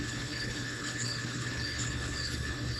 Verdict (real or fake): fake